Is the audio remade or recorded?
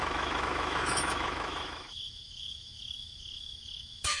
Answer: remade